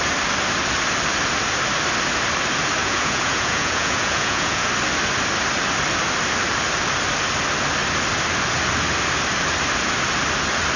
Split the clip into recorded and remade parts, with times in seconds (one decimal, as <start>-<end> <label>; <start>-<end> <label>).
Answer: 0.0-2.8 recorded; 2.8-4.7 remade; 4.7-10.8 recorded